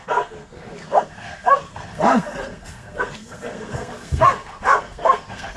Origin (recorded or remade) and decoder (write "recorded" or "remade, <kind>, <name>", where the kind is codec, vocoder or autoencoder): remade, codec, SNAC